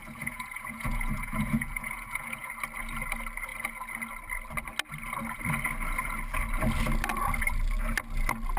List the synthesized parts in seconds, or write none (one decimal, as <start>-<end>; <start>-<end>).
0.0-2.5